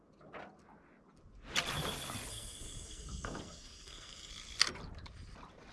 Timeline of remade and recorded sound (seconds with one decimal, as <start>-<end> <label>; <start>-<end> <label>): 0.0-2.3 recorded; 2.3-4.3 remade; 4.3-5.7 recorded